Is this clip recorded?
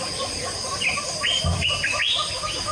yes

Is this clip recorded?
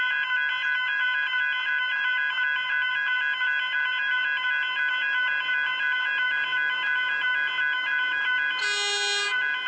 yes